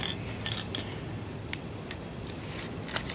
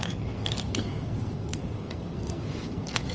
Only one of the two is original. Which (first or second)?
first